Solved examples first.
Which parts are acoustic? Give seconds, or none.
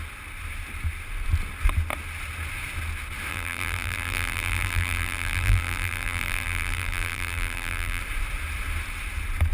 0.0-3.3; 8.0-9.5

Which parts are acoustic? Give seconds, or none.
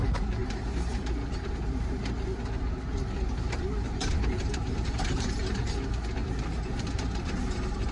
0.0-0.4; 1.1-4.1; 5.6-6.2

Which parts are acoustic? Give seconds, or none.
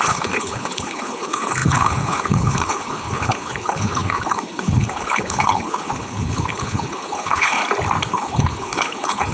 7.6-8.1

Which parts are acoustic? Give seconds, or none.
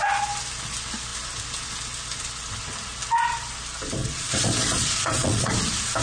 0.0-4.0; 5.5-6.0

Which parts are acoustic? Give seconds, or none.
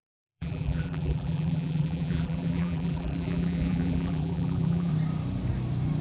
4.9-6.0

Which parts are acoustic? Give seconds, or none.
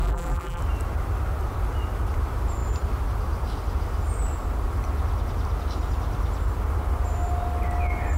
0.6-8.2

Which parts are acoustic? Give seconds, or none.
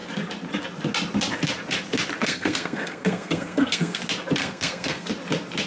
0.0-2.2; 4.0-4.4; 5.1-5.7